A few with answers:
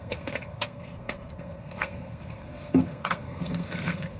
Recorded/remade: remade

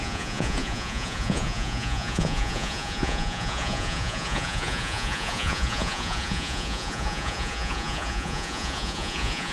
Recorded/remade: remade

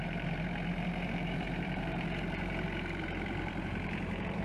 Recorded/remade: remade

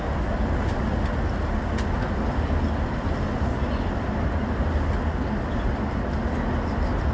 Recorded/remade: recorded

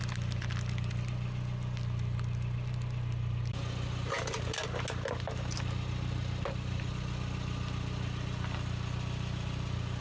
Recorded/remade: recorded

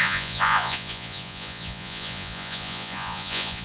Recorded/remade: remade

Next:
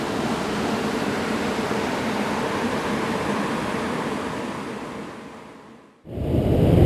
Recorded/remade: recorded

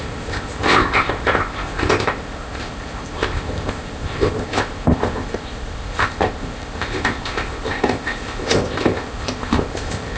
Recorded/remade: remade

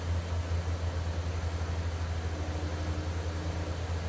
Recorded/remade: recorded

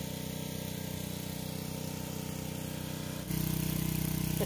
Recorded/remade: recorded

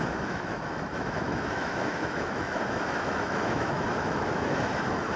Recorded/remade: remade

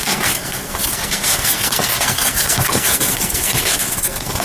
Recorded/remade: remade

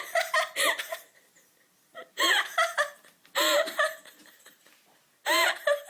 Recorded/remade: recorded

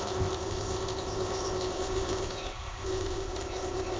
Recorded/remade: remade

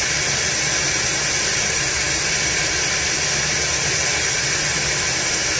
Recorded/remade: recorded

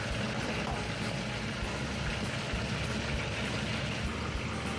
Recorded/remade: recorded